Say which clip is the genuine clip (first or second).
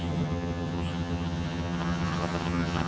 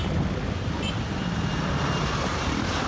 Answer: second